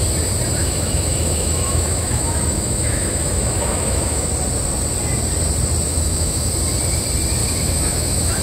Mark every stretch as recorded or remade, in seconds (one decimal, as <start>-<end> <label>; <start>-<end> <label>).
0.0-0.6 recorded; 0.6-4.3 remade; 4.3-5.9 recorded; 5.9-6.5 remade; 6.5-7.4 recorded; 7.4-8.4 remade